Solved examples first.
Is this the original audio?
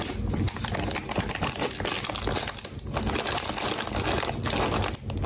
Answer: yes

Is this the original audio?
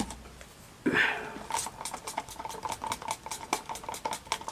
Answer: yes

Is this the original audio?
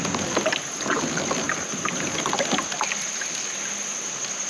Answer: yes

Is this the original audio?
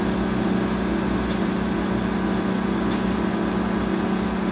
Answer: yes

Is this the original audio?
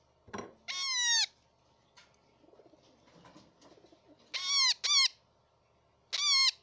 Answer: yes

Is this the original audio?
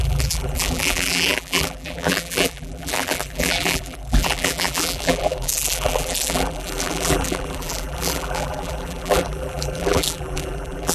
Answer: no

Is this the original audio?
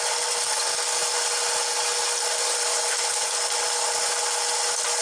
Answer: yes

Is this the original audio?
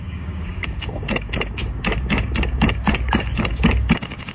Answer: no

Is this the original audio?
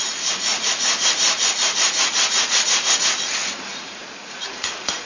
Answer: no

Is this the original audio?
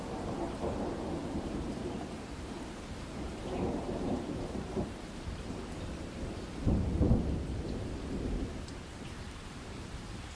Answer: no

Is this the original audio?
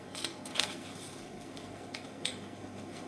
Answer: no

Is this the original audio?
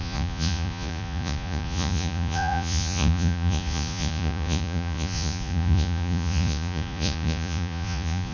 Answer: no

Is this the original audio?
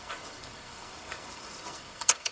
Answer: no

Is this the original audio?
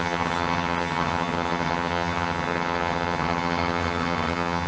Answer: no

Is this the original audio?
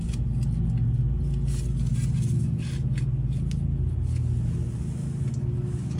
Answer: yes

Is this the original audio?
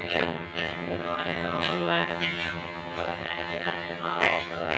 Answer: no